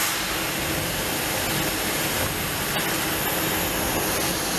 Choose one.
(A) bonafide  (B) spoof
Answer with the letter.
A